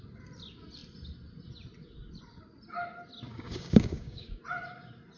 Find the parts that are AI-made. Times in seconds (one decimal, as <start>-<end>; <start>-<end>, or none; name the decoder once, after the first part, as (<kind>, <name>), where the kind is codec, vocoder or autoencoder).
3.3-4.4 (codec, DAC)

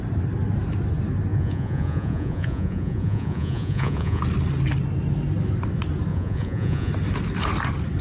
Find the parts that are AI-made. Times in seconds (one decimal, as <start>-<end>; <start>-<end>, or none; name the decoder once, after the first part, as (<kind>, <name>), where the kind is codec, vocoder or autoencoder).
1.3-4.2 (vocoder, Vocos); 6.1-6.9

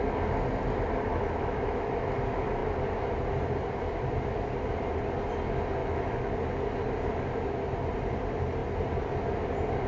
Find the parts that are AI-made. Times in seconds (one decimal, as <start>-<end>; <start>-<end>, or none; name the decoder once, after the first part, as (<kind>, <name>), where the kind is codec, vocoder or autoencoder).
1.1-1.9 (autoencoder, DAC-VAE); 5.8-6.3

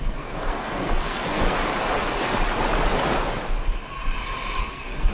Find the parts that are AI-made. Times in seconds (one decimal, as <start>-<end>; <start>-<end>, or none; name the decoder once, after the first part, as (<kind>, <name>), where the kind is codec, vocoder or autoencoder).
0.0-1.6 (codec, SNAC); 4.6-5.1